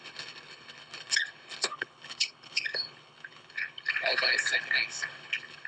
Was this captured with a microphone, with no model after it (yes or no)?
no